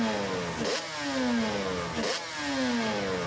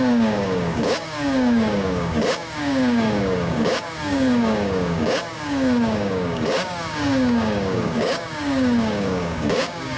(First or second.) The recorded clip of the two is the first